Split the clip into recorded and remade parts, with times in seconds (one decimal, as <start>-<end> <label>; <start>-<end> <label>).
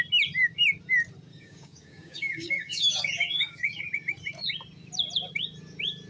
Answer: 0.0-1.3 recorded; 1.3-3.8 remade; 3.8-6.1 recorded